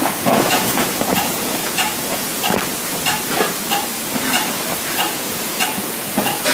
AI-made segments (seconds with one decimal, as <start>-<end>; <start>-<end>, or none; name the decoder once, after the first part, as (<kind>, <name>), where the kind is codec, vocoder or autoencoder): 0.0-2.3 (vocoder, Vocos); 5.1-6.5